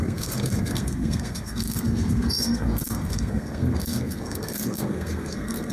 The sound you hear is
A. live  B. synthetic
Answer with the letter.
B